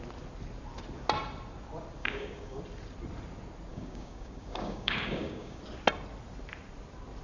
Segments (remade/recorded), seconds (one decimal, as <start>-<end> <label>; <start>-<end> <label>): 0.0-2.0 recorded; 2.0-2.6 remade; 2.6-3.7 recorded; 3.7-5.6 remade; 5.6-7.2 recorded